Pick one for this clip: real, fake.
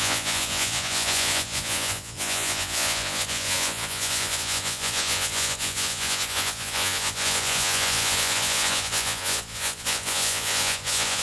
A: fake